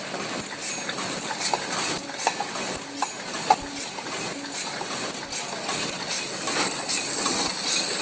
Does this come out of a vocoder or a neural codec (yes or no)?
no